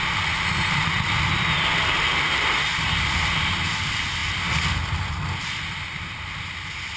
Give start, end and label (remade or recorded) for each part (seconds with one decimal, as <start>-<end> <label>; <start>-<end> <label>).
0.0-7.0 recorded